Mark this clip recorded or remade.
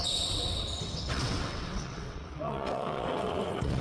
remade